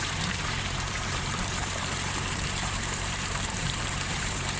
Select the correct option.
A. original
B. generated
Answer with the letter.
B